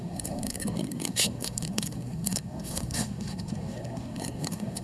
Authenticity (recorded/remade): remade